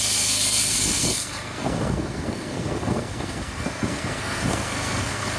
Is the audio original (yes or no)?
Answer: no